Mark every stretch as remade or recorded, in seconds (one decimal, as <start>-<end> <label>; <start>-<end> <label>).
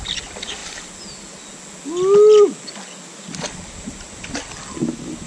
0.0-5.3 recorded